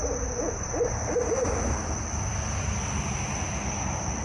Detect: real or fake real